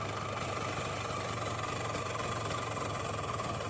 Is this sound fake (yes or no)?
no